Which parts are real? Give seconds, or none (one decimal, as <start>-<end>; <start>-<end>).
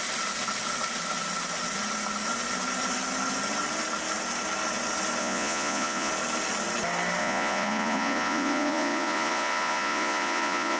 0.0-5.2; 6.1-7.2